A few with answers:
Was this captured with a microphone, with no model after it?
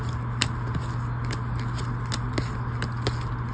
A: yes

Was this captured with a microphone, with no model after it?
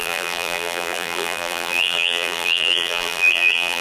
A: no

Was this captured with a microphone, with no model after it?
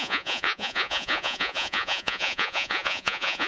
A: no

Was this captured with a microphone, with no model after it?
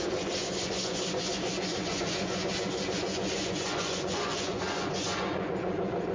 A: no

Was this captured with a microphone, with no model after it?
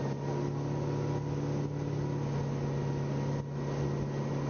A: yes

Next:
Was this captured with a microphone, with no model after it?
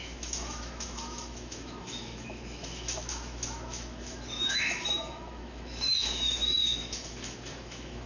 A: no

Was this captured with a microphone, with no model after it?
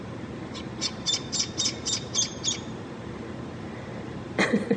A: no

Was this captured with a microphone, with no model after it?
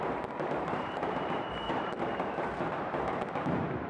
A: no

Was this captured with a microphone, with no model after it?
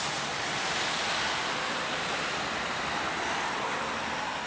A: no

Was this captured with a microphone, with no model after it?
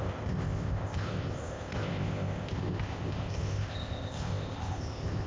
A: no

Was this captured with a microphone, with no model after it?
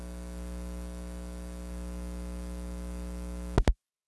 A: yes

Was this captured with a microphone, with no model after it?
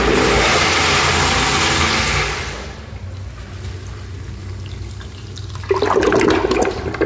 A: yes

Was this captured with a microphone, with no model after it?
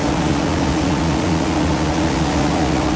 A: no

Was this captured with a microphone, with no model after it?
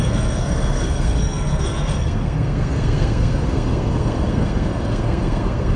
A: no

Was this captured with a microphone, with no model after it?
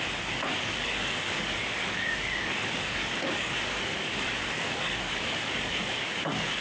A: no